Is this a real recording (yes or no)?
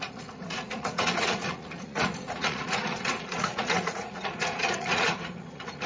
no